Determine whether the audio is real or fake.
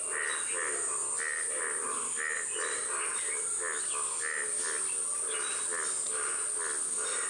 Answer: real